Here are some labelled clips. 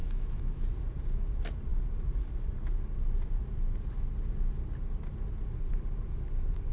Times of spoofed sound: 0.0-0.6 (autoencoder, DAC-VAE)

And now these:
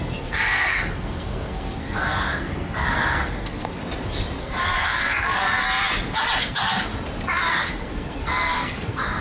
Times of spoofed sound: 0.0-3.8 (codec, SNAC); 4.4-5.6; 6.4-6.9; 7.5-9.2